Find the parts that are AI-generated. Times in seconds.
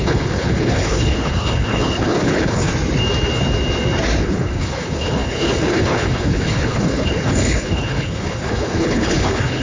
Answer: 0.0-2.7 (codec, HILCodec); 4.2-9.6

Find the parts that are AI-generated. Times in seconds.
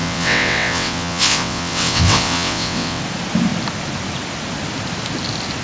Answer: 0.0-3.0 (vocoder, WaveNeXt)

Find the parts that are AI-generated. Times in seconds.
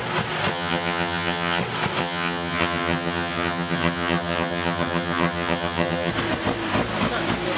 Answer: 0.5-1.6 (vocoder, HiFi-GAN); 2.0-6.1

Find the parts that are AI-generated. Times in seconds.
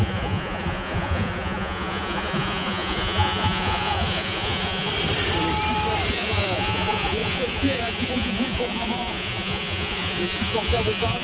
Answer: 0.0-4.9 (vocoder, Vocos); 6.1-11.2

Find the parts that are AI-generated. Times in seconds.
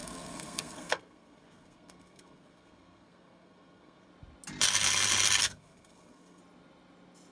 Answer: 0.0-4.1 (codec, SNAC); 5.4-6.4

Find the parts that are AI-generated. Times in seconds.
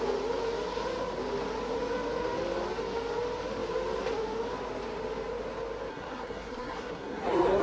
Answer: 5.9-7.6 (codec, SNAC)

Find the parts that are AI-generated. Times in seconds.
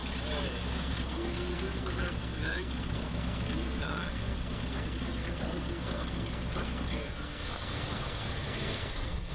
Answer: 0.7-9.3 (codec, SNAC)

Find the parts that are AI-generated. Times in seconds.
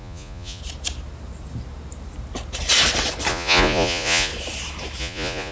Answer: 0.0-0.6 (vocoder, Vocos); 3.3-4.3; 5.0-5.5